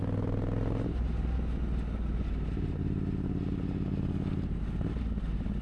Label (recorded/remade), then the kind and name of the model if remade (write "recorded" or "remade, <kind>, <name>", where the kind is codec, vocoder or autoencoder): recorded